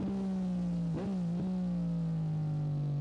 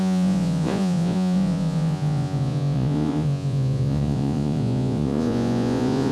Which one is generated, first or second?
second